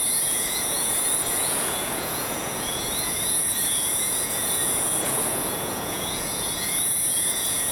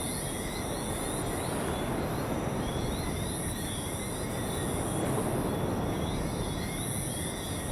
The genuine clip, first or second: second